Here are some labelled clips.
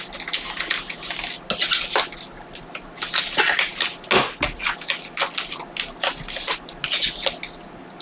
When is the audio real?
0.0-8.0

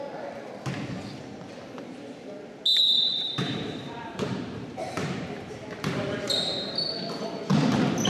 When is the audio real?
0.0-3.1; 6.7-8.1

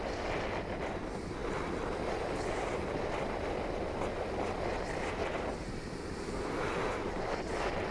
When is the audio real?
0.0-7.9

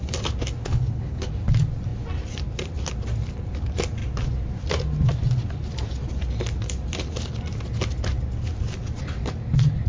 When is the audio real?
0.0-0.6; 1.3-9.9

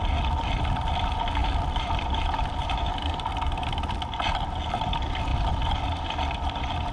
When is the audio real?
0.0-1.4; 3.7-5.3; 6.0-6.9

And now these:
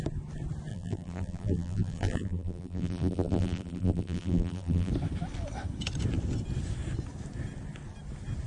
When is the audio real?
0.0-0.7; 4.9-8.5

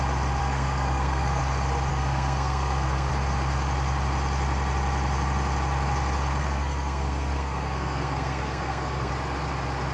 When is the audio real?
0.0-0.4; 1.4-1.9; 3.1-6.4; 9.1-9.9

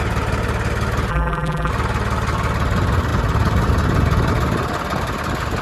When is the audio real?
0.0-1.1; 1.7-5.6